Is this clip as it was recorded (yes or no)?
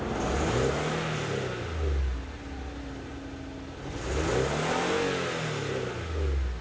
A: yes